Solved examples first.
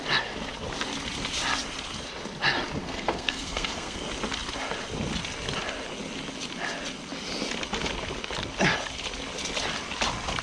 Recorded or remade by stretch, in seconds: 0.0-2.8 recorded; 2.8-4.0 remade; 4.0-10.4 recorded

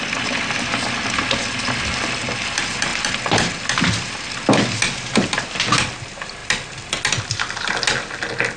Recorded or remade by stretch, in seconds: 0.0-8.6 recorded

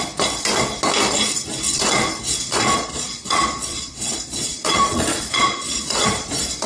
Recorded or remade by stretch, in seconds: 0.0-2.5 recorded; 2.5-6.3 remade; 6.3-6.7 recorded